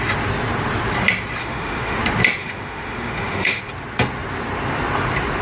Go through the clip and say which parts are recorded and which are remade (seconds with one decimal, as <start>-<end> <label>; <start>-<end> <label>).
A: 0.0-1.4 recorded; 1.4-2.0 remade; 2.0-2.4 recorded; 2.4-3.6 remade; 3.6-5.4 recorded